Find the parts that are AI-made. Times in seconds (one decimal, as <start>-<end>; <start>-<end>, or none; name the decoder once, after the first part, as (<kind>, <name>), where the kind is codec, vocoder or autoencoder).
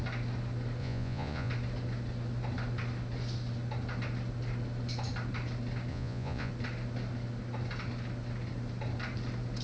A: 0.8-1.5 (vocoder, Vocos); 5.9-6.5